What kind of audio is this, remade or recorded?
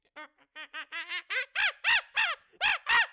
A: recorded